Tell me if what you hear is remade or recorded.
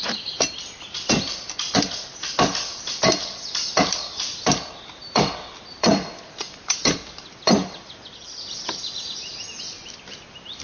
remade